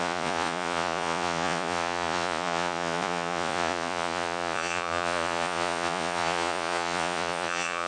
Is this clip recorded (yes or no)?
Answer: no